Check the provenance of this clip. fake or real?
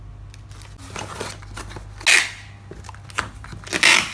real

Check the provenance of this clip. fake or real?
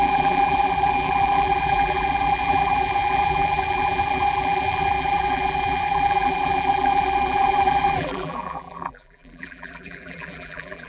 fake